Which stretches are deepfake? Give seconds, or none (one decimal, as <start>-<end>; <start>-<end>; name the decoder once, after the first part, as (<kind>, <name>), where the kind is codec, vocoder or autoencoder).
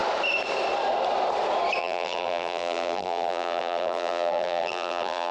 1.8-5.3 (vocoder, BigVGAN v2)